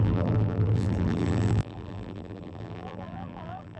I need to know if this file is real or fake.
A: fake